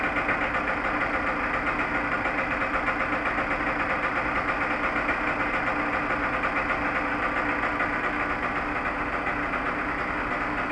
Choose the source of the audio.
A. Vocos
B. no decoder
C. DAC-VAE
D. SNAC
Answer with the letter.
B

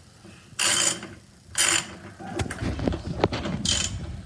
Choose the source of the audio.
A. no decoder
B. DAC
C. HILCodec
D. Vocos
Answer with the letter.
A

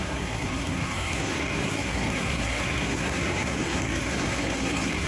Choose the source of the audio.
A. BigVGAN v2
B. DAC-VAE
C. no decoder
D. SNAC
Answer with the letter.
D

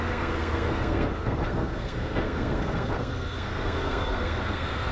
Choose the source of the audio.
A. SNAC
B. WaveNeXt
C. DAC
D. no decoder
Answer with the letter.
A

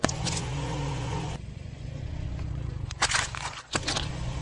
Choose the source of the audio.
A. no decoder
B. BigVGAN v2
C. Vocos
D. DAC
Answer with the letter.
C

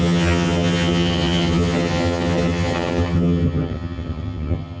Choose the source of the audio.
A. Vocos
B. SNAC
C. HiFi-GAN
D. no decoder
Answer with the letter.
C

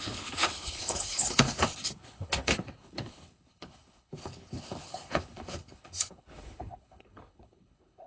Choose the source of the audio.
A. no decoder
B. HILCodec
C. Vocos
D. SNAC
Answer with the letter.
B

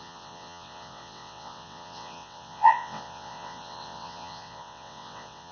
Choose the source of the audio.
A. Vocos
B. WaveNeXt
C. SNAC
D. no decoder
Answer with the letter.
B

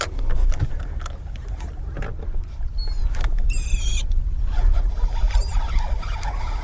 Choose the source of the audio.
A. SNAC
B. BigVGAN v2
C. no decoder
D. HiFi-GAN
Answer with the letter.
C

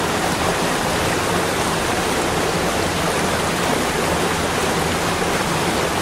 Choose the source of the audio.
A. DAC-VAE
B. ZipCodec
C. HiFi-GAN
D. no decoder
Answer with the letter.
D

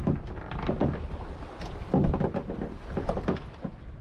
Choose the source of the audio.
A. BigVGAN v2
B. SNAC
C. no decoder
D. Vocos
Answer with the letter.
C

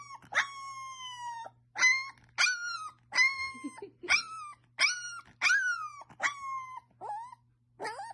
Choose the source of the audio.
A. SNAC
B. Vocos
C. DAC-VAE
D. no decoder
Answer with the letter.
D